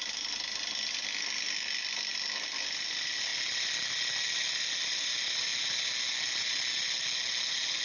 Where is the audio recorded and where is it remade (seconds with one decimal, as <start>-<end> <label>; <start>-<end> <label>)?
0.0-7.8 recorded

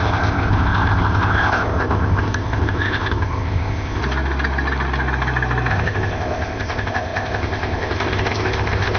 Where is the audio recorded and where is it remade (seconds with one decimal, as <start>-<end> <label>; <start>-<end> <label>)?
0.0-4.0 remade; 4.0-5.7 recorded; 5.7-9.0 remade

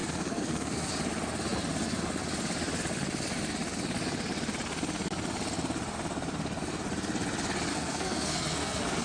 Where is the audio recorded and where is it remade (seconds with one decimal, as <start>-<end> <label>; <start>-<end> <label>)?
0.0-0.9 remade; 0.9-7.7 recorded; 7.7-9.0 remade

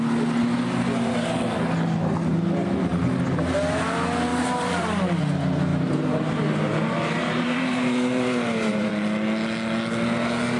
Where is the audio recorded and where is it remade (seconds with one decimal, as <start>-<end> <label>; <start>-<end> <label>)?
0.0-4.3 recorded; 4.3-5.2 remade; 5.2-5.7 recorded; 5.7-8.9 remade; 8.9-10.6 recorded

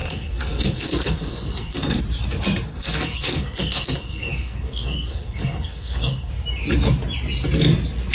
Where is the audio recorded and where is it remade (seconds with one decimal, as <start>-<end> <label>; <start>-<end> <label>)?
0.0-2.0 remade; 2.0-2.7 recorded; 2.7-6.3 remade; 6.3-8.1 recorded